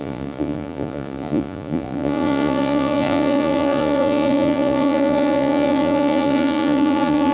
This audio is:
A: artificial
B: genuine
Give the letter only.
A